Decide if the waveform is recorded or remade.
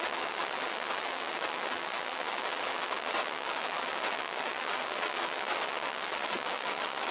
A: remade